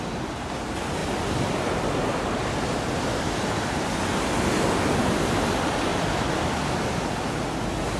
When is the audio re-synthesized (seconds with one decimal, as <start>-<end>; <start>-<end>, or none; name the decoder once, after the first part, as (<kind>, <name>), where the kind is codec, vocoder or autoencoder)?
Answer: 5.9-7.2 (vocoder, BigVGAN v2)